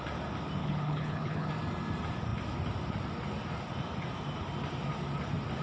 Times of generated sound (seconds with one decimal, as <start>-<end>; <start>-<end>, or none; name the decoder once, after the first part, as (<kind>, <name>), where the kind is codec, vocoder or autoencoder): 0.6-1.5 (codec, HILCodec)